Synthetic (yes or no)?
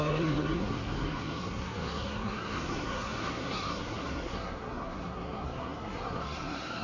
yes